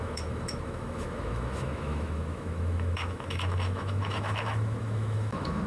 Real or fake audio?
fake